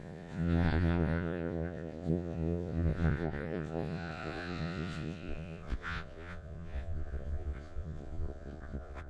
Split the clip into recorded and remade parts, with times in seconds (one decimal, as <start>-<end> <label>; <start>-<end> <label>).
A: 0.0-9.1 remade